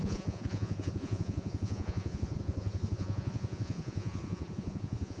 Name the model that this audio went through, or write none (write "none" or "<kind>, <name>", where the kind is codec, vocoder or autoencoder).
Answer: vocoder, Vocos